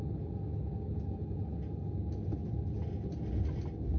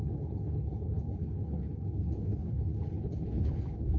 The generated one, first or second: second